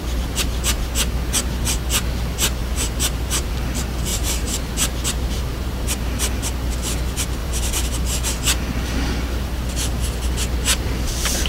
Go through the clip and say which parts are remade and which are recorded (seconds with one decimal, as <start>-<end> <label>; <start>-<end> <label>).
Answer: 0.0-2.6 recorded; 2.6-3.5 remade; 3.5-4.1 recorded; 4.1-4.7 remade; 4.7-7.4 recorded; 7.4-8.0 remade; 8.0-11.5 recorded